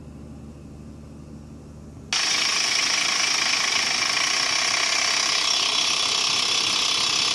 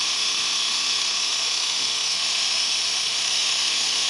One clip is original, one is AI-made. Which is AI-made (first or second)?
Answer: second